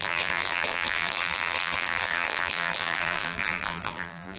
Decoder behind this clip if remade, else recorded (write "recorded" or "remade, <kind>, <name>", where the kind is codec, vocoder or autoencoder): remade, vocoder, BigVGAN v2